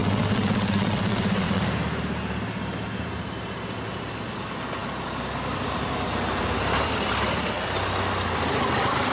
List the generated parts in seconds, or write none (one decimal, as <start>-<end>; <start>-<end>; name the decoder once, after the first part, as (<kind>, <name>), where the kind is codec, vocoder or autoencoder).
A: 0.0-1.6 (vocoder, WaveNeXt)